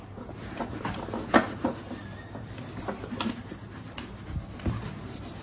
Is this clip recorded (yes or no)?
yes